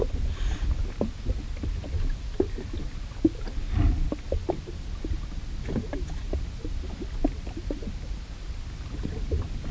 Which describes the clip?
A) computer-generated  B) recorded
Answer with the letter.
B